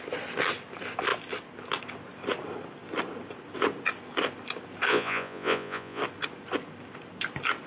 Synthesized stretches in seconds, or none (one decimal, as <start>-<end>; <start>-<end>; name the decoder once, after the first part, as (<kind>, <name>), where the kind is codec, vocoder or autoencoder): 4.9-6.0 (vocoder, Vocos)